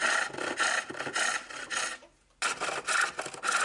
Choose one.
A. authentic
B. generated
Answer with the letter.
A